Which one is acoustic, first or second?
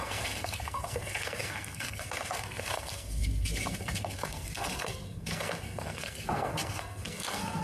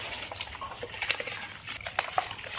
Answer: second